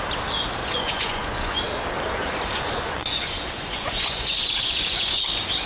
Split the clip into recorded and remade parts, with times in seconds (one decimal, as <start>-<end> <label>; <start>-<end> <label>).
0.0-0.6 recorded; 0.6-1.6 remade; 1.6-2.2 recorded; 2.2-5.2 remade; 5.2-5.7 recorded